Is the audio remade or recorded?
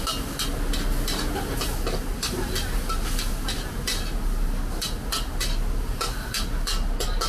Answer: recorded